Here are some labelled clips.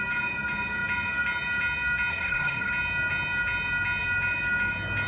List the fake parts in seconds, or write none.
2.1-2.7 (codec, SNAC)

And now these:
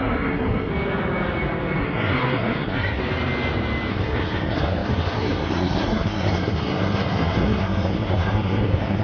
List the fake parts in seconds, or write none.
0.0-0.7 (codec, SNAC); 1.8-3.0; 3.9-9.0